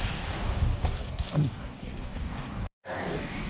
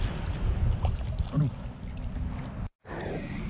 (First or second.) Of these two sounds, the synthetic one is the first